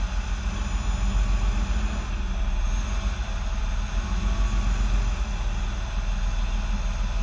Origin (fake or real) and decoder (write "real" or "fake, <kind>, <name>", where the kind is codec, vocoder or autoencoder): real